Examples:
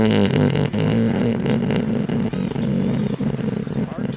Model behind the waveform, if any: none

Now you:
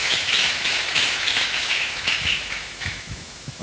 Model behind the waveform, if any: autoencoder, DAC-VAE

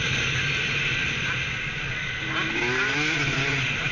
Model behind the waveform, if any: none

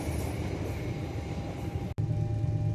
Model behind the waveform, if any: none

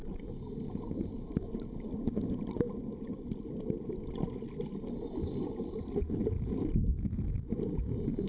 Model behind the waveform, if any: none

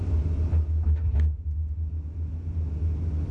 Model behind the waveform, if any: none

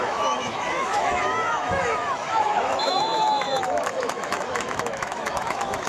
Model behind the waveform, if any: autoencoder, DAC-VAE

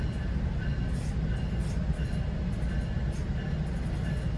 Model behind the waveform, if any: none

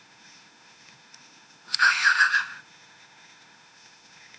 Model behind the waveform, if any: autoencoder, DAC-VAE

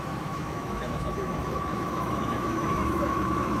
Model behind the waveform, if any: autoencoder, DAC-VAE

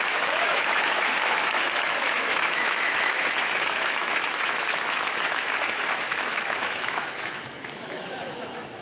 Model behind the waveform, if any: autoencoder, DAC-VAE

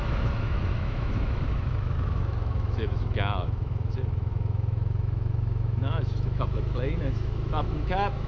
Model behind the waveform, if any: autoencoder, DAC-VAE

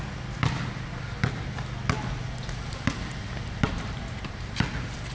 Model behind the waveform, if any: none